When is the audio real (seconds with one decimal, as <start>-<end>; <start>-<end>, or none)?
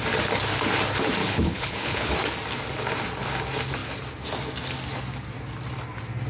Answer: 0.0-1.2; 2.1-6.3